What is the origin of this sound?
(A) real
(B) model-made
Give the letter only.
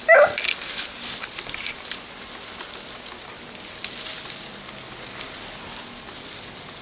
A